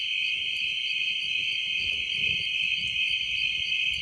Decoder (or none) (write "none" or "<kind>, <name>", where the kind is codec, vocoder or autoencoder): none